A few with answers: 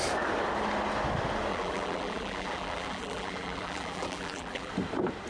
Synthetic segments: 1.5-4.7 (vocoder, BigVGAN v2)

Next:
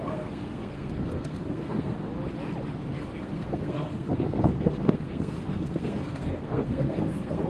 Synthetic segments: 0.0-2.1 (codec, SNAC); 3.2-7.5